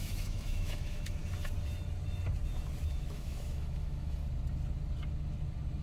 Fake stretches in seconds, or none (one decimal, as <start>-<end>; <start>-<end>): 0.0-1.2; 2.9-4.2